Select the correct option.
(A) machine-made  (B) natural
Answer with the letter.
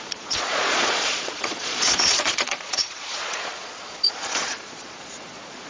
A